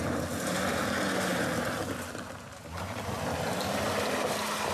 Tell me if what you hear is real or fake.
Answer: real